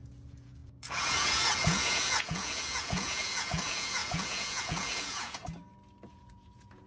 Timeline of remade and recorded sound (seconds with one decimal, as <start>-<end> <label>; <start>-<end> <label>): 0.0-5.4 remade; 5.4-6.1 recorded; 6.1-6.9 remade